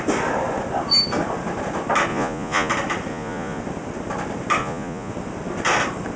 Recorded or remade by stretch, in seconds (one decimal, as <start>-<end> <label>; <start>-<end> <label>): 0.0-2.1 recorded; 2.1-2.7 remade; 2.7-3.1 recorded; 3.1-3.6 remade; 3.6-4.6 recorded; 4.6-5.1 remade; 5.1-6.2 recorded